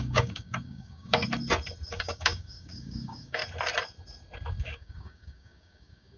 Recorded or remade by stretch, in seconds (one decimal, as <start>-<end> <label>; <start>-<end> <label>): 0.0-1.2 remade; 1.2-1.9 recorded; 1.9-3.4 remade; 3.4-4.6 recorded; 4.6-6.2 remade